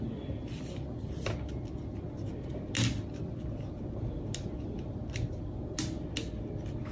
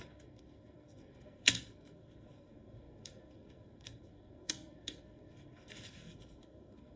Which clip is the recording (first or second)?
first